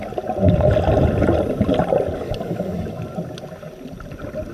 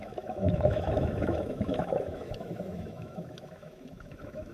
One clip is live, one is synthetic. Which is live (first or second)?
first